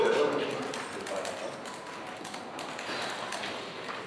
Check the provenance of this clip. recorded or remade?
recorded